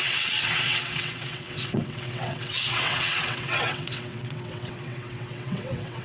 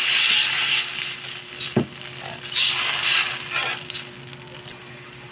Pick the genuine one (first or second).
second